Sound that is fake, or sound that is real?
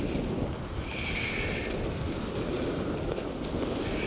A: real